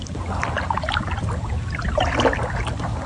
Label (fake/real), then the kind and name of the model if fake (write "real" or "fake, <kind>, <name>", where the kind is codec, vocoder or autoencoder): real